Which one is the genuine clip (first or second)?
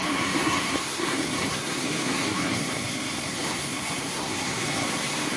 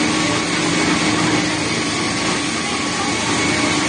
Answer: second